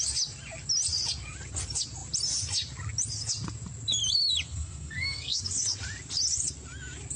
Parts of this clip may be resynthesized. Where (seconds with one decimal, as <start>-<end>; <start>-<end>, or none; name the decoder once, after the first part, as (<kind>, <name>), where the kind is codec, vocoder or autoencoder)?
4.5-5.4 (codec, SNAC)